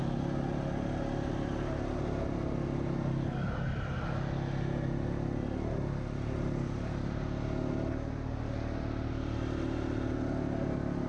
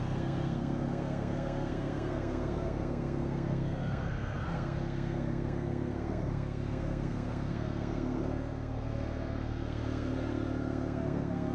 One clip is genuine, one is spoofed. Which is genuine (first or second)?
first